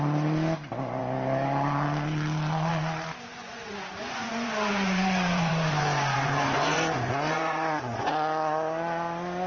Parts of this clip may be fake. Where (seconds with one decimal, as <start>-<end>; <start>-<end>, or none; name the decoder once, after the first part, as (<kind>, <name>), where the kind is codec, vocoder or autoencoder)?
3.3-8.1 (vocoder, Vocos)